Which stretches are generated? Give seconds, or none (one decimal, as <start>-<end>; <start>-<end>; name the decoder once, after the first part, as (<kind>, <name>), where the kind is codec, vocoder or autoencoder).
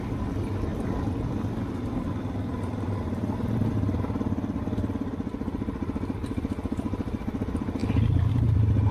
none